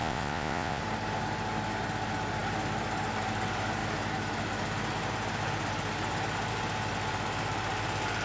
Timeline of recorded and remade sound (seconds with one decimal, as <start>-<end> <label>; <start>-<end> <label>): 0.0-0.8 remade; 0.8-8.2 recorded